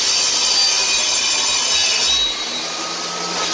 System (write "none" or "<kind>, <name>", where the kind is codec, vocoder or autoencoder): none